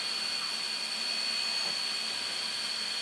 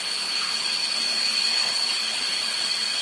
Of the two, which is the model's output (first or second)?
second